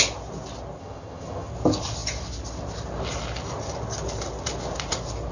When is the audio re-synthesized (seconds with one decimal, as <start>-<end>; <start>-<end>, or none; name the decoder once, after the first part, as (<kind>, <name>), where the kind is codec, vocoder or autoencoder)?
0.8-1.5 (vocoder, HiFi-GAN)